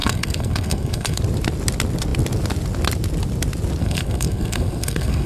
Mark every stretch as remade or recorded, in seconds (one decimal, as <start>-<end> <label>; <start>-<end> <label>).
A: 0.0-1.2 remade; 1.2-3.8 recorded; 3.8-5.3 remade